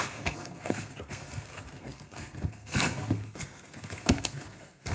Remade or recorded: remade